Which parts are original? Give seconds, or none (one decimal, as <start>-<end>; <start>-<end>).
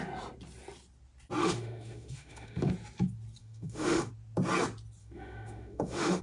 0.0-1.4; 2.7-3.4; 4.1-5.0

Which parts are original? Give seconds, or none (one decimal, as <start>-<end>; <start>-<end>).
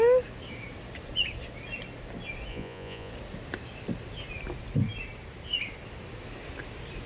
0.0-2.5; 3.1-7.1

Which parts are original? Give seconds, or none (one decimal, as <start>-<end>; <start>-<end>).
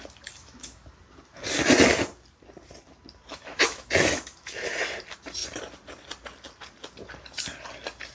0.0-0.4; 1.0-3.3; 4.7-8.1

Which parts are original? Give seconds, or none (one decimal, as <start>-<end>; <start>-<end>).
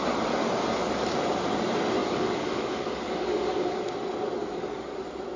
0.0-2.0; 3.8-4.4; 5.0-5.4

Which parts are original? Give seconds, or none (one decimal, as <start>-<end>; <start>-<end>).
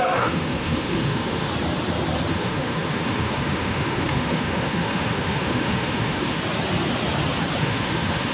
1.5-2.3; 6.4-7.6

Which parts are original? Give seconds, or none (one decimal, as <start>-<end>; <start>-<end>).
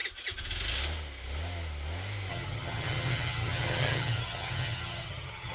0.0-2.3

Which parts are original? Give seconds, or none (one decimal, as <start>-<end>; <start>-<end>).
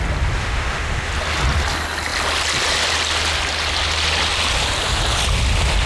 0.0-0.4; 1.1-5.9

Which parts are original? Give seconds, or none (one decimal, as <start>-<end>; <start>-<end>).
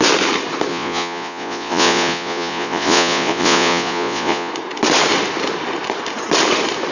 0.0-0.7; 4.5-6.9